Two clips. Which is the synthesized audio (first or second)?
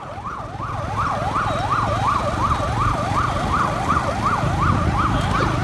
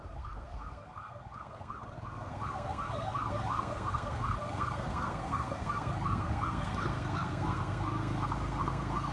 second